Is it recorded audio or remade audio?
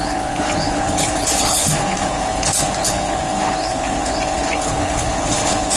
remade